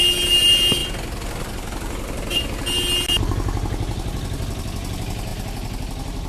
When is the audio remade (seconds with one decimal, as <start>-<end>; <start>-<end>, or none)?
none